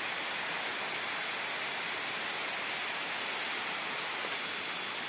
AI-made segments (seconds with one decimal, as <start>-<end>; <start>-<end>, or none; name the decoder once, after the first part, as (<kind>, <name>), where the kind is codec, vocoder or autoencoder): none